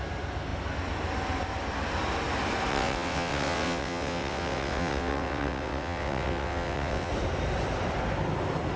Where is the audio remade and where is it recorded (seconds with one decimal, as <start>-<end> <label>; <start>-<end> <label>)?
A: 0.0-2.7 recorded; 2.7-7.1 remade; 7.1-8.8 recorded